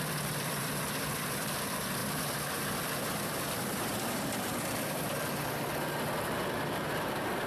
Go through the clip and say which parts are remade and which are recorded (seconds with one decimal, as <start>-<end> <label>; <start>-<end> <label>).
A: 0.0-2.0 remade; 2.0-3.1 recorded; 3.1-7.5 remade